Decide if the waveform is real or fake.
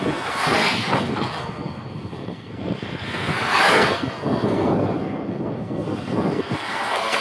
fake